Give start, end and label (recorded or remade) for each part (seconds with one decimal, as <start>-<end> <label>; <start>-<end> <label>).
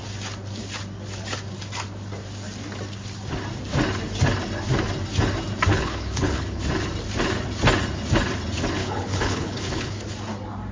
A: 0.0-5.7 recorded; 5.7-6.6 remade; 6.6-8.8 recorded; 8.8-9.9 remade; 9.9-10.7 recorded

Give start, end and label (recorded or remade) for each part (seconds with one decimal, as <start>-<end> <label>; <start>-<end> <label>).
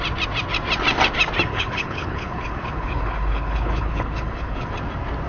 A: 0.0-1.5 recorded; 1.5-4.7 remade; 4.7-5.3 recorded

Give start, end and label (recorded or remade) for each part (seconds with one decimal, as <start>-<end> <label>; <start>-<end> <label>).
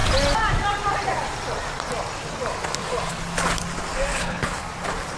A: 0.0-4.1 recorded; 4.1-4.6 remade; 4.6-5.2 recorded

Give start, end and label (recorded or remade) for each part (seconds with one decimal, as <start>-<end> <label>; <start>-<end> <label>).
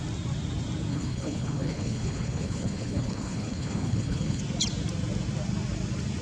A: 0.0-0.9 recorded; 0.9-4.4 remade; 4.4-6.2 recorded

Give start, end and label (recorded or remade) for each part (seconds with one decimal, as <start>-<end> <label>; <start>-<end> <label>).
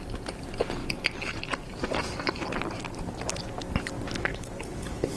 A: 0.0-4.3 recorded; 4.3-5.2 remade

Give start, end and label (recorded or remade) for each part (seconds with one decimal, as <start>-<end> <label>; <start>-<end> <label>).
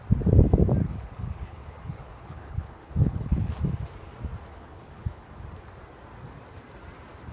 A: 0.0-0.8 recorded; 0.8-3.6 remade; 3.6-4.5 recorded; 4.5-5.3 remade; 5.3-7.3 recorded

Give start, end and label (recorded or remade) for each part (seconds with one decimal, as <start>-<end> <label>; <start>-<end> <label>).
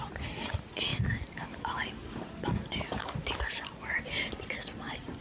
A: 0.0-5.2 recorded